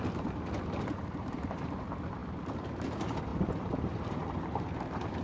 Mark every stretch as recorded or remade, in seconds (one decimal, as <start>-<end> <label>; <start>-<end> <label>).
0.0-3.3 remade; 3.3-4.0 recorded; 4.0-5.2 remade